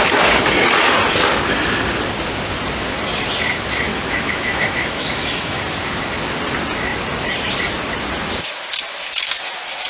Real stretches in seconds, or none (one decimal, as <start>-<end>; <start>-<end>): 0.0-3.9; 5.6-9.9